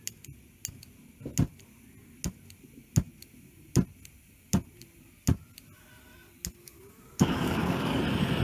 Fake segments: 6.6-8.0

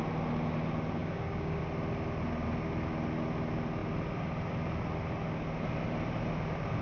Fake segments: 1.0-1.6

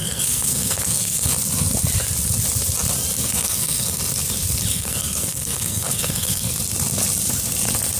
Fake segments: 0.0-1.3; 3.2-4.0; 4.7-6.5

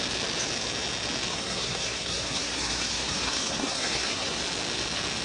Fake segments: 1.3-4.4

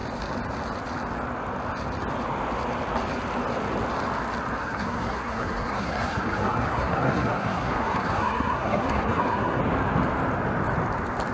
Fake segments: 4.6-9.6

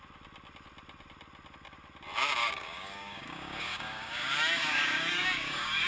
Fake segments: 2.4-5.9